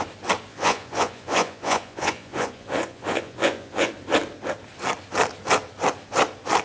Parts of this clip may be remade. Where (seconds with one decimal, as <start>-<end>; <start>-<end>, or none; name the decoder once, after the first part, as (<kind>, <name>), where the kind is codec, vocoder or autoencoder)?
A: 0.5-3.9 (vocoder, Vocos)